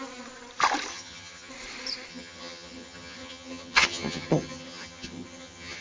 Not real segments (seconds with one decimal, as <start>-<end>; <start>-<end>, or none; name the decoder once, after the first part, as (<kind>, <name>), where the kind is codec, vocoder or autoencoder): 0.9-1.5 (vocoder, HiFi-GAN); 2.1-5.8